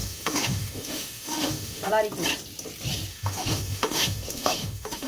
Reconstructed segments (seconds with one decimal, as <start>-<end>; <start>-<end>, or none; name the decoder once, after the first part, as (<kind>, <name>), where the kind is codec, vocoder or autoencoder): 0.0-1.9 (autoencoder, DAC-VAE); 3.1-5.1